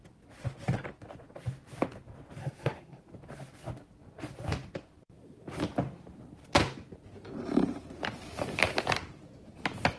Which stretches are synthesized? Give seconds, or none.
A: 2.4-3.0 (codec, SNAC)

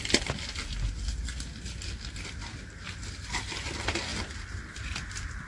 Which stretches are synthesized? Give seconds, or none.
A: none

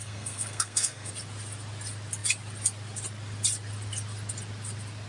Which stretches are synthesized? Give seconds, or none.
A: 0.0-1.1 (codec, SNAC)

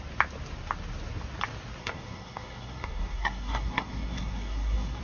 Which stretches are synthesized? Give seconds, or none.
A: 1.8-5.0 (codec, SNAC)

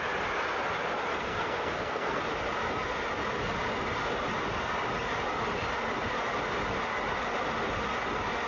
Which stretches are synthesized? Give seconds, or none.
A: 1.1-2.2 (codec, SNAC)